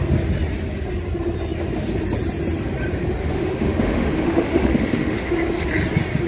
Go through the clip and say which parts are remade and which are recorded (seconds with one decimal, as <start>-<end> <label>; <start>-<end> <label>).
0.0-3.2 recorded; 3.2-5.3 remade; 5.3-6.3 recorded